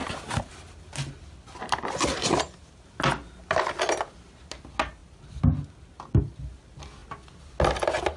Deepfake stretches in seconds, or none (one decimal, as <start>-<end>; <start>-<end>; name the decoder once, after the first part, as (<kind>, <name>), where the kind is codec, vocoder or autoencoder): none